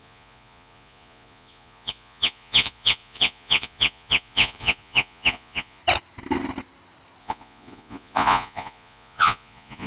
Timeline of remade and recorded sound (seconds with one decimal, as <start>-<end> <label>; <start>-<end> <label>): 0.0-5.8 remade; 5.8-7.2 recorded; 7.2-9.9 remade